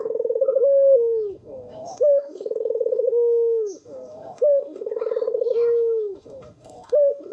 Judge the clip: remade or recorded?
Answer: remade